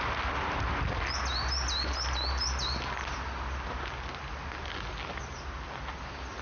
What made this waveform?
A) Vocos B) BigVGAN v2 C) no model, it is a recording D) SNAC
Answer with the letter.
C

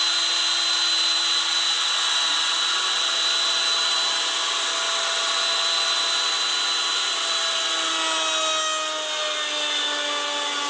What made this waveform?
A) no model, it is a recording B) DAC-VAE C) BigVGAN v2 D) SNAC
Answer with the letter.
A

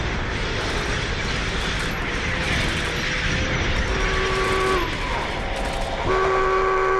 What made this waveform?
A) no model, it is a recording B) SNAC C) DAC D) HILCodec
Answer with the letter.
A